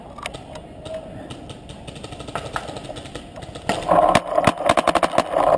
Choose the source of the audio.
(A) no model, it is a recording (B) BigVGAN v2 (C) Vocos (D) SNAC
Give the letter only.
A